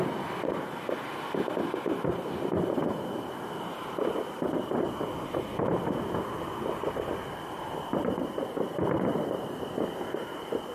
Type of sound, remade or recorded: recorded